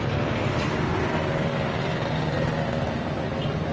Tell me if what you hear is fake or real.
real